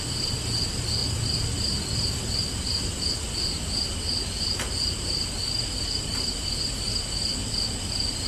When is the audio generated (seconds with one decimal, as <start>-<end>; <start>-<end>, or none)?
none